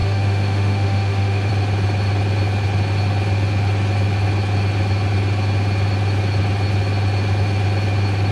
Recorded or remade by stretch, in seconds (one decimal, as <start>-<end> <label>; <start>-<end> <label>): 0.0-1.5 remade; 1.5-8.3 recorded